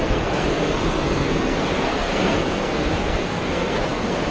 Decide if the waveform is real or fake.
fake